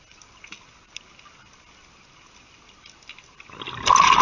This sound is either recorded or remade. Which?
recorded